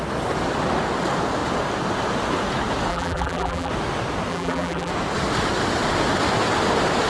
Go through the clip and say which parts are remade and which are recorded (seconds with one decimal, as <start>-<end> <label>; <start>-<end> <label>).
0.0-2.9 recorded; 2.9-3.7 remade; 3.7-4.3 recorded; 4.3-4.9 remade; 4.9-7.1 recorded